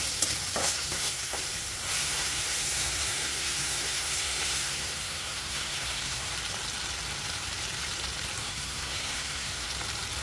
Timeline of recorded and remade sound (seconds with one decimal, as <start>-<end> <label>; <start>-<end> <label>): 0.0-0.6 recorded; 0.6-1.4 remade; 1.4-2.0 recorded; 2.0-6.3 remade; 6.3-8.4 recorded; 8.4-9.7 remade; 9.7-10.2 recorded

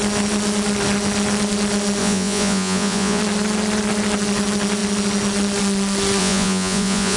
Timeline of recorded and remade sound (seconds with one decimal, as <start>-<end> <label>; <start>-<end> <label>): 0.0-2.0 recorded; 2.0-3.2 remade; 3.2-6.2 recorded; 6.2-7.2 remade

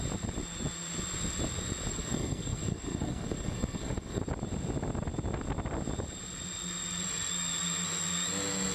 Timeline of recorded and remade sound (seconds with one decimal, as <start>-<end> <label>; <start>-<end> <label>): 0.0-1.9 recorded; 1.9-4.2 remade; 4.2-8.7 recorded

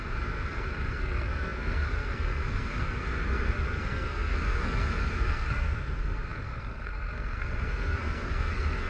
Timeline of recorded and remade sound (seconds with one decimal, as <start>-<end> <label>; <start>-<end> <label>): 0.0-8.9 remade

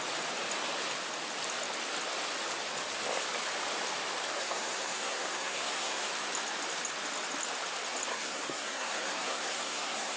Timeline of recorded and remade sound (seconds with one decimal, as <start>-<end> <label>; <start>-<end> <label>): 0.0-4.4 recorded; 4.4-6.1 remade; 6.1-8.1 recorded; 8.1-10.2 remade